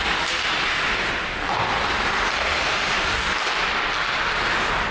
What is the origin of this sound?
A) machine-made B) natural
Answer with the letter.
B